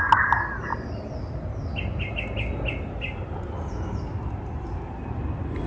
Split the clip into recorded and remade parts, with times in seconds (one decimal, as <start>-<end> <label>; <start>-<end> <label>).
0.0-5.7 recorded